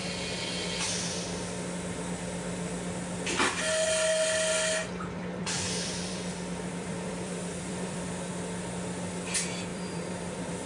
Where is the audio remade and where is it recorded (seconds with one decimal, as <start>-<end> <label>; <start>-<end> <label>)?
0.0-4.8 recorded; 4.8-8.3 remade; 8.3-9.7 recorded; 9.7-10.7 remade